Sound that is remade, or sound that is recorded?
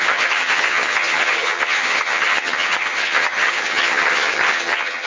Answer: remade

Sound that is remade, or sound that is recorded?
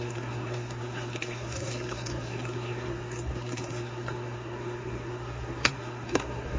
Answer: remade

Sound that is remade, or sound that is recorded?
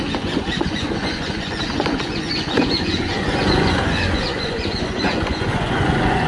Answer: remade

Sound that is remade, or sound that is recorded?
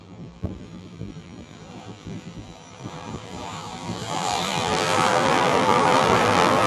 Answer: remade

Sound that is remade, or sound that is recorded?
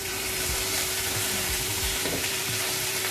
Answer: remade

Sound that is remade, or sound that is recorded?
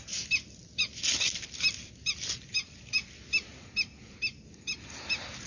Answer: recorded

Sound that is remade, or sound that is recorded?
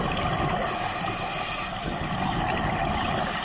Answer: recorded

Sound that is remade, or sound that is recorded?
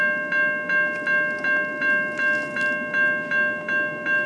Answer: recorded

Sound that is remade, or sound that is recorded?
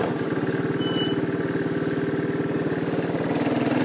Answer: recorded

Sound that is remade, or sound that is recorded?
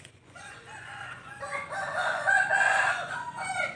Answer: remade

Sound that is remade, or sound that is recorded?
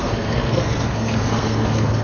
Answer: remade